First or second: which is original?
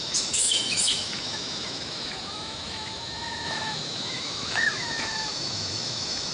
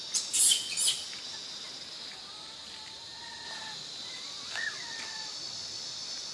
second